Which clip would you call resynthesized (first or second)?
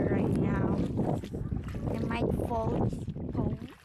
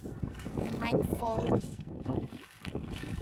second